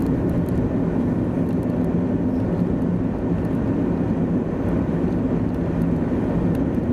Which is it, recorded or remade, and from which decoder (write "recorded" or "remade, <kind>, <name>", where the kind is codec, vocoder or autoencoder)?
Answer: recorded